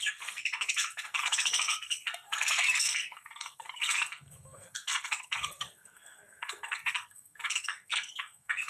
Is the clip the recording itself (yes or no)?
no